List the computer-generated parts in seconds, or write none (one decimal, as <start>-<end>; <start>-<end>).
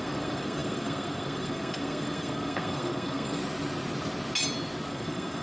0.0-3.4; 4.9-5.4